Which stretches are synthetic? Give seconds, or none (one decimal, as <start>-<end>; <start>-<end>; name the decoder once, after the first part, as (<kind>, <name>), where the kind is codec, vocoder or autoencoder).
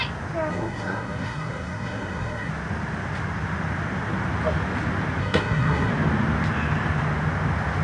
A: 0.5-2.5 (codec, SNAC); 5.2-5.9